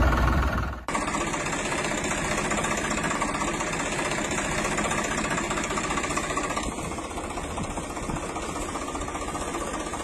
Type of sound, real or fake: fake